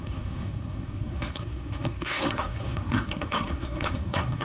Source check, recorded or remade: remade